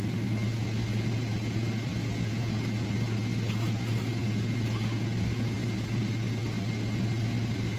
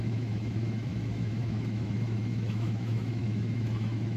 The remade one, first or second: second